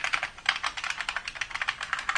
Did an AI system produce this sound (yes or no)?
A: no